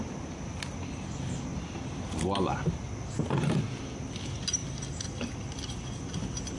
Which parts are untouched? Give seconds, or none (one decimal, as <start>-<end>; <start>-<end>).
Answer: 0.0-6.6

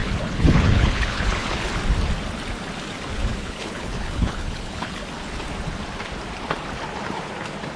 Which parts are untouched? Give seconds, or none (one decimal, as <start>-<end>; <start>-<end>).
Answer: 1.7-3.3; 5.0-7.8

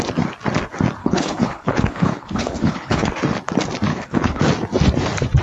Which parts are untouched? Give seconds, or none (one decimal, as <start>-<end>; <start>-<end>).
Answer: 0.0-1.0; 3.1-3.9; 4.4-5.4

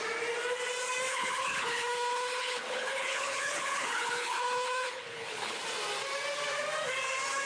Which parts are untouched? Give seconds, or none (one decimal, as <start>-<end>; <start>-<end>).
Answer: 0.0-1.1; 5.6-7.5

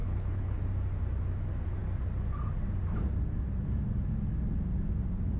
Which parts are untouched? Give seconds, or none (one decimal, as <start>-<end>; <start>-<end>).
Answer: 0.6-5.4

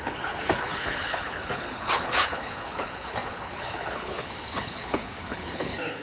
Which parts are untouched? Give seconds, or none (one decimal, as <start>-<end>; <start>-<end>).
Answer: none

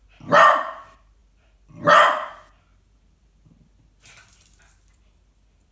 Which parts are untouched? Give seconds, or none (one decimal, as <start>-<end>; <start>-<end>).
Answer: 0.0-5.7